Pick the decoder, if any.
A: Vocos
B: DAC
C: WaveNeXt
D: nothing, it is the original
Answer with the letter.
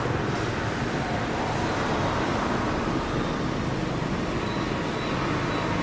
D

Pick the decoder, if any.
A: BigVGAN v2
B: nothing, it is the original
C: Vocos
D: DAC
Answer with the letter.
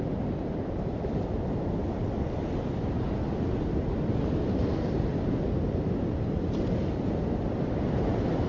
B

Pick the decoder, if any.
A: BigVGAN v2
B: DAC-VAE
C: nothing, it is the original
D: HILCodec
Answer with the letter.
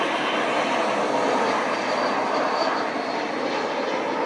C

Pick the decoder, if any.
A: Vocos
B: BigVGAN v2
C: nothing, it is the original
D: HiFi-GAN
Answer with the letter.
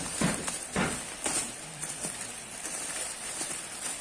B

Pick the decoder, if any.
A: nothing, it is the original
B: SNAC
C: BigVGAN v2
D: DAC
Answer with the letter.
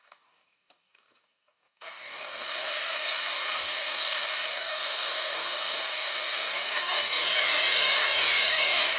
D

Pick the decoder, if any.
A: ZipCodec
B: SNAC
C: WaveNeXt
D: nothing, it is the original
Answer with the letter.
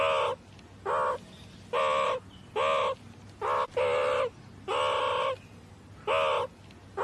D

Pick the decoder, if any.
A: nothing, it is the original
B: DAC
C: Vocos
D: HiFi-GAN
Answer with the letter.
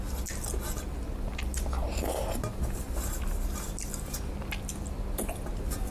A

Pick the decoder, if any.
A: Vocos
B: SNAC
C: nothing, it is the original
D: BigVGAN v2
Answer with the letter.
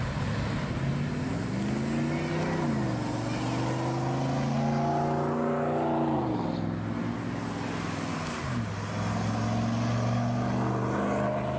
C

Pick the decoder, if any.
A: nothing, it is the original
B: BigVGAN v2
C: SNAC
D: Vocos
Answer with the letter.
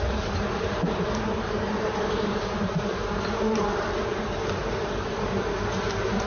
B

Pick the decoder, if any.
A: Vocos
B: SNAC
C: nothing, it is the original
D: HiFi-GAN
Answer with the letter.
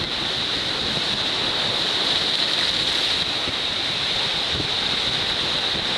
C